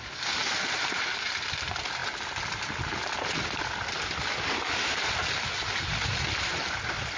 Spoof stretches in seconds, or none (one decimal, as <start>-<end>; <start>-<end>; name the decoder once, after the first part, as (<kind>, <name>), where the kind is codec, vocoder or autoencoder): none